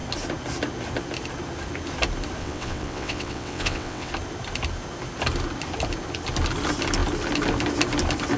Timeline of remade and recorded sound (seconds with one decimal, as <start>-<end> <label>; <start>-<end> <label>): 0.0-2.4 recorded; 2.4-4.1 remade; 4.1-8.4 recorded

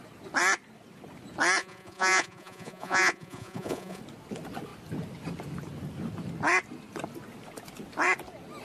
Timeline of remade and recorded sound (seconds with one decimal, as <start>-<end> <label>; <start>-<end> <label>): 0.0-1.6 recorded; 1.6-4.0 remade; 4.0-8.6 recorded

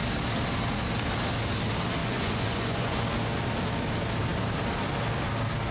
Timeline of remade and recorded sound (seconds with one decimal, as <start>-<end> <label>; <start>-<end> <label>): 0.0-2.0 recorded; 2.0-3.0 remade; 3.0-5.7 recorded

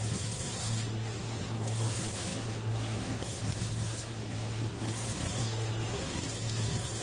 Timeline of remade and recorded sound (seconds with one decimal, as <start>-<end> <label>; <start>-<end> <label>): 0.0-7.0 remade

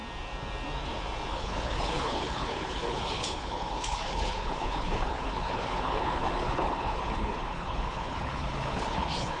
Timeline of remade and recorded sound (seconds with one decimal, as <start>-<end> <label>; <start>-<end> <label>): 0.0-1.3 recorded; 1.3-9.4 remade

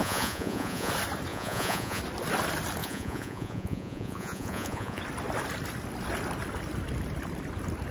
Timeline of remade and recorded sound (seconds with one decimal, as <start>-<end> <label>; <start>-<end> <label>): 0.0-0.9 remade; 0.9-1.3 recorded; 1.3-2.0 remade; 2.0-2.8 recorded; 2.8-5.0 remade; 5.0-7.9 recorded

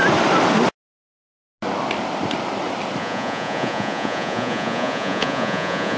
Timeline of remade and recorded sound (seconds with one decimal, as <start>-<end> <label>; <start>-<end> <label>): 0.0-3.0 recorded; 3.0-6.0 remade

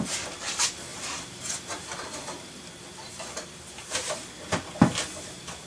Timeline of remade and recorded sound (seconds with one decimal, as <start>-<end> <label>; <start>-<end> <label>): 0.0-0.9 recorded; 0.9-4.3 remade; 4.3-5.7 recorded